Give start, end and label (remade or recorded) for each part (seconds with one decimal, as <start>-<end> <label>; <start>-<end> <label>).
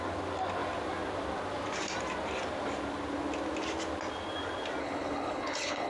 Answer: 0.0-4.8 recorded; 4.8-5.9 remade